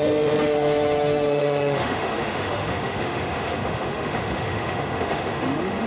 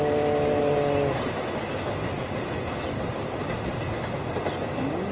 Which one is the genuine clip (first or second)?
second